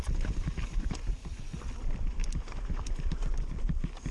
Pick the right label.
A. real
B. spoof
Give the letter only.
B